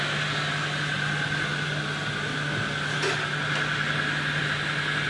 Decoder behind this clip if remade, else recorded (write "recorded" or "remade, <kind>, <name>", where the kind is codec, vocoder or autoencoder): recorded